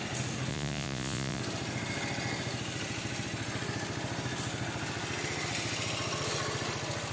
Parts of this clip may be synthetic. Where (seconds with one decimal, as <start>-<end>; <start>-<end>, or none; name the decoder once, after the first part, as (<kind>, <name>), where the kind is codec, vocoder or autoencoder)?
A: 0.5-1.4 (vocoder, Vocos)